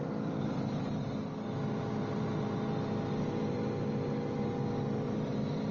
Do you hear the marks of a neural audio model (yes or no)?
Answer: no